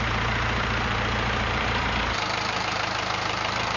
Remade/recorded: remade